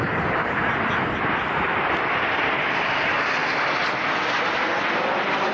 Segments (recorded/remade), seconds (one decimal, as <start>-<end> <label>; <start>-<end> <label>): 0.0-5.5 recorded